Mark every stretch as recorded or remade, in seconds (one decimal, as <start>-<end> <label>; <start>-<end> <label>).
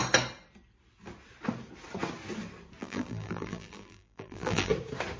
0.0-2.8 recorded; 2.8-4.7 remade; 4.7-5.2 recorded